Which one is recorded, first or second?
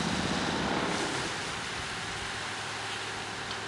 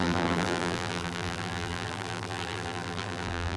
first